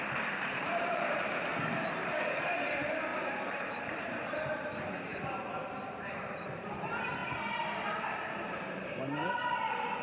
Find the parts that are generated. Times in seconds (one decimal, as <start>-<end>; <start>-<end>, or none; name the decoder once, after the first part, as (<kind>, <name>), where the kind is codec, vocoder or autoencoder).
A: 0.0-1.5 (vocoder, BigVGAN v2); 2.3-10.0